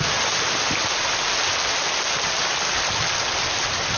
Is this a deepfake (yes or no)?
no